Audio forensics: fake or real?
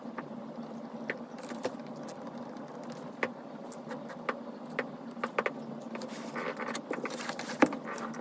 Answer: real